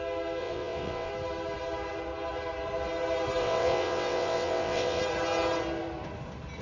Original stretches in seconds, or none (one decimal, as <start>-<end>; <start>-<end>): 0.0-0.4; 1.1-3.4; 5.0-6.6